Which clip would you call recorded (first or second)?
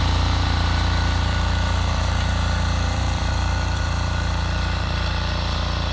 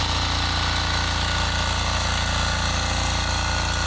second